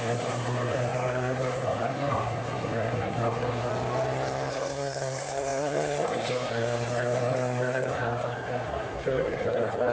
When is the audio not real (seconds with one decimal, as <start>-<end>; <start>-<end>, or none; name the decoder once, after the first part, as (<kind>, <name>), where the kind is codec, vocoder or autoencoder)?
0.0-3.7 (codec, SNAC); 4.5-9.9